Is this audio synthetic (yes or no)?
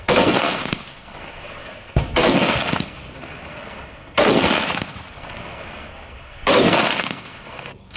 yes